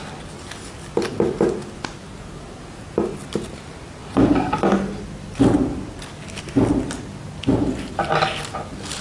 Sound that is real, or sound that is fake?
real